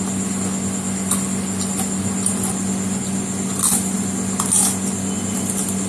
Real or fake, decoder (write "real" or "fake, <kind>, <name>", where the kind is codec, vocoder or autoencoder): real